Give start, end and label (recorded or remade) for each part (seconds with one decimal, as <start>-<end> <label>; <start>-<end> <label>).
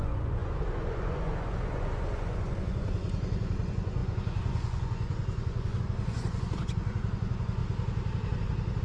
0.0-7.6 remade; 7.6-8.8 recorded